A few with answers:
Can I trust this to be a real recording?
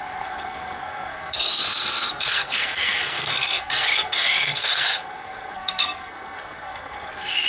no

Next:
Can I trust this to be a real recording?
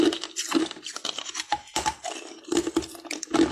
yes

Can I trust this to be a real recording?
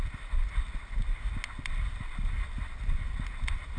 yes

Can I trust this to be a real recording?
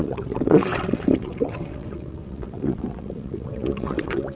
no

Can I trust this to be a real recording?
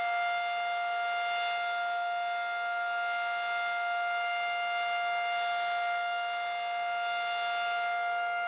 yes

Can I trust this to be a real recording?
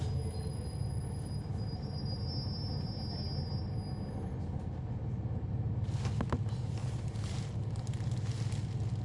yes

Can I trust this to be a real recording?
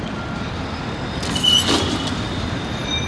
yes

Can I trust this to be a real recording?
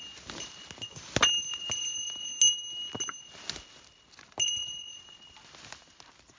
yes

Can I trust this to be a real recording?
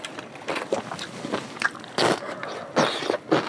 yes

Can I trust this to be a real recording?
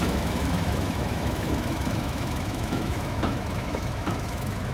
no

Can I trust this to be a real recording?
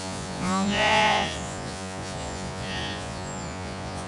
no